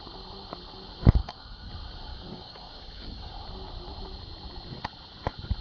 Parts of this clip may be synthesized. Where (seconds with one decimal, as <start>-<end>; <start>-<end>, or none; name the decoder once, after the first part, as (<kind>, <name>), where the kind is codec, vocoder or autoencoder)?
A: 1.2-1.7 (codec, DAC); 2.1-3.3